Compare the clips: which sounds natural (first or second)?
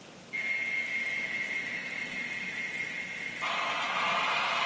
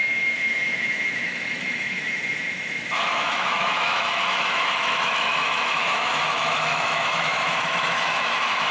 first